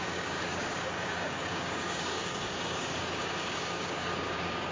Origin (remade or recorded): remade